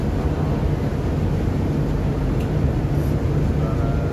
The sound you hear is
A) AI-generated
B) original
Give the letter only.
B